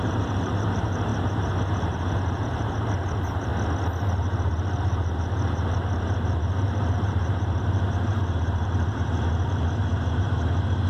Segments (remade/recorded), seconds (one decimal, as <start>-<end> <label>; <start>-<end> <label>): 0.0-1.1 remade; 1.1-1.7 recorded; 1.7-3.5 remade; 3.5-4.1 recorded; 4.1-10.9 remade

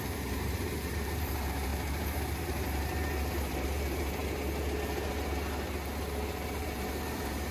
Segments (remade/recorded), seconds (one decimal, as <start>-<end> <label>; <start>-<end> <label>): 0.0-4.2 remade; 4.2-6.4 recorded; 6.4-7.5 remade

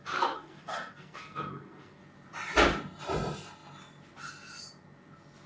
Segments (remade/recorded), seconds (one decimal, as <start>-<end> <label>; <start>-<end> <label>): 0.0-2.0 remade; 2.0-5.5 recorded

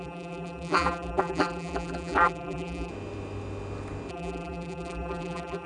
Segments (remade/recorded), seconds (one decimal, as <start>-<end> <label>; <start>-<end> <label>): 0.0-2.9 remade; 2.9-4.1 recorded; 4.1-5.7 remade

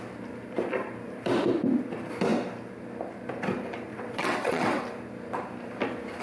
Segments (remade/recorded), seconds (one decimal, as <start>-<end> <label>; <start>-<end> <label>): 0.0-3.9 recorded; 3.9-4.8 remade; 4.8-6.2 recorded

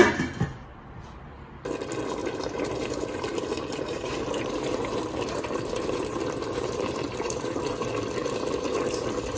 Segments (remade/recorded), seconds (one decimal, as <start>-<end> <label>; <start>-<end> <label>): 0.0-2.2 recorded; 2.2-7.3 remade; 7.3-9.4 recorded

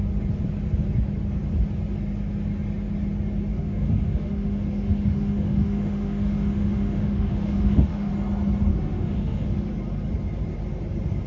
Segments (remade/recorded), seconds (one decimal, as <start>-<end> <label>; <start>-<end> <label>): 0.0-3.5 recorded; 3.5-8.1 remade; 8.1-8.7 recorded; 8.7-9.7 remade; 9.7-11.3 recorded